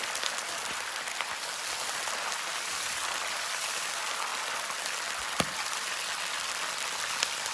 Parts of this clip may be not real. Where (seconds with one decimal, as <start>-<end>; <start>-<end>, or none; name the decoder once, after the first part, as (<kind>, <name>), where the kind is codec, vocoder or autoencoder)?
none